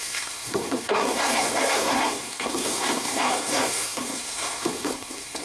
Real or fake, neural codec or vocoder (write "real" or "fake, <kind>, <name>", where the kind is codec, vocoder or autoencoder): fake, codec, SNAC